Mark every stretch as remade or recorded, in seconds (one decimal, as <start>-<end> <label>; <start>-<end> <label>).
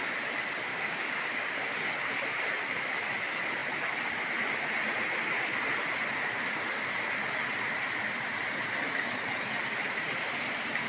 0.0-0.7 recorded; 0.7-1.7 remade; 1.7-10.9 recorded